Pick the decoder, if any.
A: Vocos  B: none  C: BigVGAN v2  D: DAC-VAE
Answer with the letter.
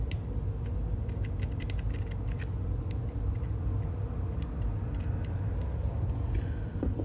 B